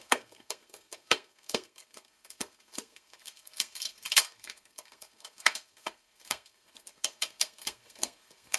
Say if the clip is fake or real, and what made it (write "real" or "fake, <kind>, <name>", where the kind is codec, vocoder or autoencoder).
fake, codec, SNAC